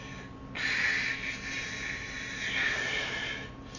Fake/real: real